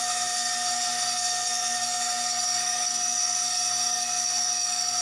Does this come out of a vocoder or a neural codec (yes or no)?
yes